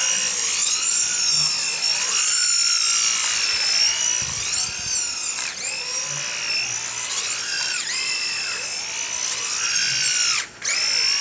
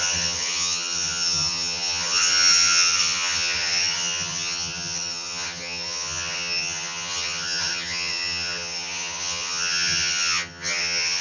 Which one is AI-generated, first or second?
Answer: second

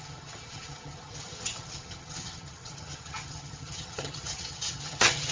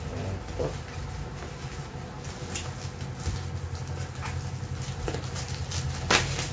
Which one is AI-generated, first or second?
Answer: first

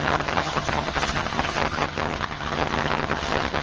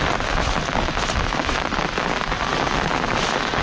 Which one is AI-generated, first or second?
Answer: first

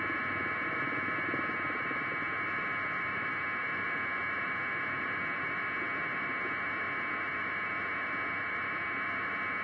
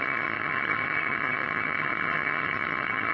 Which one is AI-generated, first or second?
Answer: second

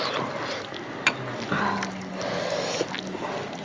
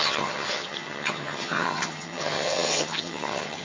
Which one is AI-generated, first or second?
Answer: second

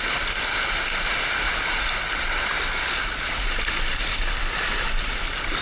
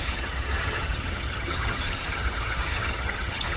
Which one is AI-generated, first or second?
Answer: second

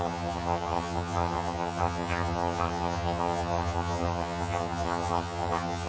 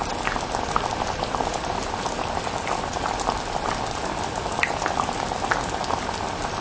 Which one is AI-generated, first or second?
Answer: first